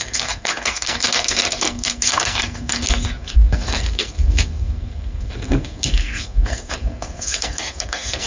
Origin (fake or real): fake